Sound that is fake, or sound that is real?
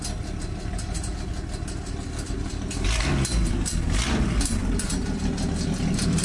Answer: real